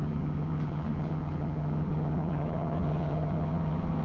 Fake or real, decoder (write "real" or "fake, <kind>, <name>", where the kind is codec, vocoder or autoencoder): fake, vocoder, HiFi-GAN